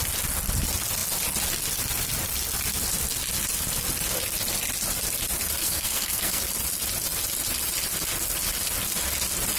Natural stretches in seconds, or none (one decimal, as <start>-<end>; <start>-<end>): 0.0-5.6; 6.4-9.6

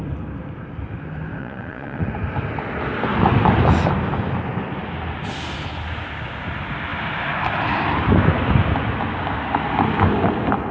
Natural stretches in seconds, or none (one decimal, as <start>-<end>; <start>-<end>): 0.0-1.4; 2.1-10.7

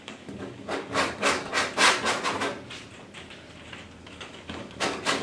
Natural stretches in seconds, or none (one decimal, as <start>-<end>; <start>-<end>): 1.5-4.0

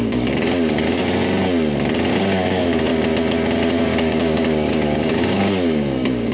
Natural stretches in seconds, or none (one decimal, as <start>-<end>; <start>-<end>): 1.0-2.1; 2.9-3.8

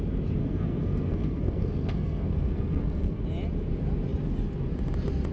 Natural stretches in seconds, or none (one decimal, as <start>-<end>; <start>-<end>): 0.0-0.4; 3.2-5.3